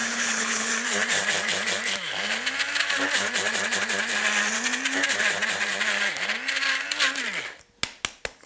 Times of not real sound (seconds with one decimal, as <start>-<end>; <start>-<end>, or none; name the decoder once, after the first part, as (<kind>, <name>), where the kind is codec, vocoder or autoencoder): 0.0-0.7 (codec, HILCodec)

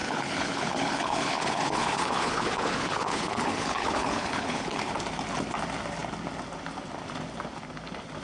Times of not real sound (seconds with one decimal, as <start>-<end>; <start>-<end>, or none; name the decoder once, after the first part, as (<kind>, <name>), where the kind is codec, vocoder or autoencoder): 0.0-4.9 (codec, HILCodec)

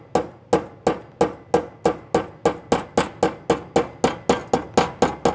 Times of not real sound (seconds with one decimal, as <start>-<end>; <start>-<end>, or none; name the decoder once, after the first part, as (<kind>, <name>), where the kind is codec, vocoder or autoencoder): none

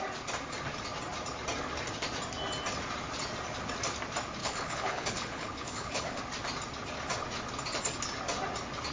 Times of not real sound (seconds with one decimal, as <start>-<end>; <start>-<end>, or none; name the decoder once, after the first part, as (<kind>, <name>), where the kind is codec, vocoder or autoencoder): 4.4-6.2 (codec, HILCodec)